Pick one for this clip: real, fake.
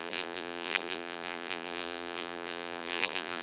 fake